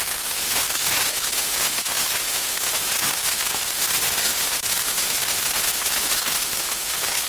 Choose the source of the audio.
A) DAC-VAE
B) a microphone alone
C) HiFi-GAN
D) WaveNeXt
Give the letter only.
A